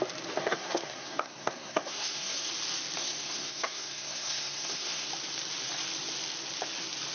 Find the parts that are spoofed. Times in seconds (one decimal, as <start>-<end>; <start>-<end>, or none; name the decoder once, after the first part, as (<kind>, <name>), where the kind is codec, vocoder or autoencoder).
0.4-2.5 (codec, SNAC); 3.0-5.1